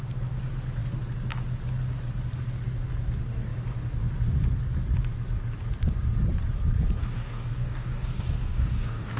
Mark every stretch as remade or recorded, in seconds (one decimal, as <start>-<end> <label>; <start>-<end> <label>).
0.0-7.0 recorded; 7.0-9.2 remade